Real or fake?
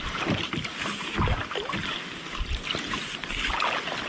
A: real